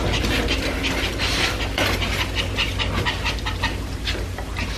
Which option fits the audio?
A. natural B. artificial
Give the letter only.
A